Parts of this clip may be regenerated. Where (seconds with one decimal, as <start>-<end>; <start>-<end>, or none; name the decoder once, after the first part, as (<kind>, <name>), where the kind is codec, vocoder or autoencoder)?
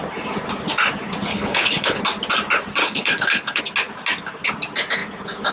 1.3-2.0 (codec, HILCodec); 2.8-3.6